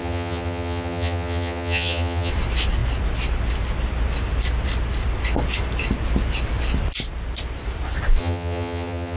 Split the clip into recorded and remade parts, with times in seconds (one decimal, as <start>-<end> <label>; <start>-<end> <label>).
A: 0.0-2.3 remade; 2.3-8.2 recorded; 8.2-9.2 remade